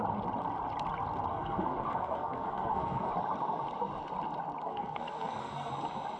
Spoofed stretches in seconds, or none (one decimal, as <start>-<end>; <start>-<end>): 1.3-3.1; 4.7-5.7